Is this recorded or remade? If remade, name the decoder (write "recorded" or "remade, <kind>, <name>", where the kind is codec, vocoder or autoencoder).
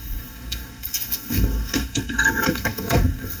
remade, codec, SNAC